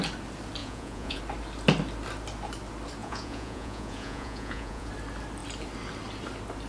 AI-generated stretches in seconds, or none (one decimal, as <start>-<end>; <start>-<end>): 0.6-1.2; 3.0-4.9